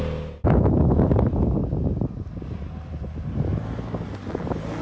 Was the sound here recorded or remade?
recorded